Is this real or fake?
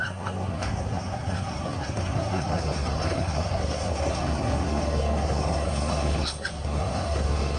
fake